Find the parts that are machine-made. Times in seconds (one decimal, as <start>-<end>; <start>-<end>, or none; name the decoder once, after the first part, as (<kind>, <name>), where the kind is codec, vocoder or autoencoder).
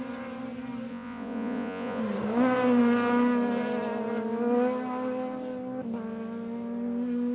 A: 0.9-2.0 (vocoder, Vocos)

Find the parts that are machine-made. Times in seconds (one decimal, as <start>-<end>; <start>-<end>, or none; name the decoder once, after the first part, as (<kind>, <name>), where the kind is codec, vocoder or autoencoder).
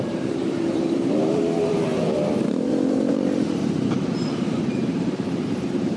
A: 0.0-3.6 (vocoder, BigVGAN v2); 4.6-6.0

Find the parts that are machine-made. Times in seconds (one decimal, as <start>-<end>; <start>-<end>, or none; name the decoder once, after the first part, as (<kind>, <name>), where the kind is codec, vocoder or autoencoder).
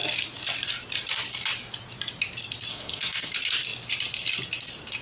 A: 2.7-3.3 (codec, SNAC)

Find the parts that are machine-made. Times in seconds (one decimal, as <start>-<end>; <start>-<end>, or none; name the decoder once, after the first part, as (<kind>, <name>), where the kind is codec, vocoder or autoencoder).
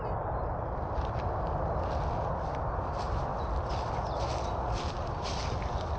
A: 0.0-3.3 (vocoder, BigVGAN v2); 5.6-6.0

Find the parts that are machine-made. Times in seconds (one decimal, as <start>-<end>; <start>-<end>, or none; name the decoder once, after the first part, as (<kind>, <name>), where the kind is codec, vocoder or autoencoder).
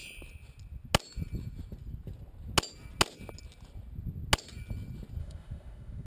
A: 5.2-6.1 (autoencoder, DAC-VAE)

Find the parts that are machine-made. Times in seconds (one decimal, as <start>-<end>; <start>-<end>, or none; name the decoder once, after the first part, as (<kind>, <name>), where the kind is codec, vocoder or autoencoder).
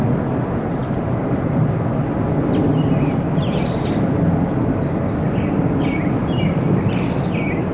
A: none